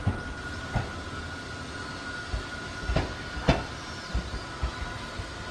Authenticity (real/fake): real